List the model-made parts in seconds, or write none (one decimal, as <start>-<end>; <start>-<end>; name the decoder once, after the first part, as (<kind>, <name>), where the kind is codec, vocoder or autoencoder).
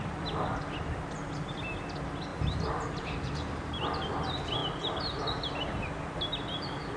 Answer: 2.3-3.8 (vocoder, BigVGAN v2)